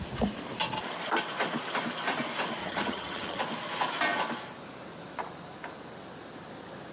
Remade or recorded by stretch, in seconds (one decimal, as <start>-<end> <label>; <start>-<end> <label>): 0.0-2.6 recorded; 2.6-3.4 remade; 3.4-6.9 recorded